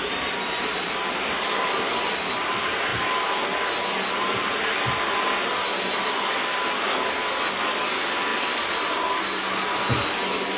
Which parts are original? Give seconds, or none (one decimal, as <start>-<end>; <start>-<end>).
1.7-8.3; 9.2-10.6